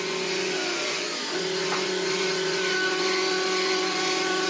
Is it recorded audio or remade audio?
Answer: remade